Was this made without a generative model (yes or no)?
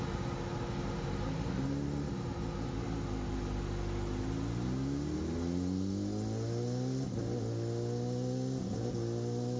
yes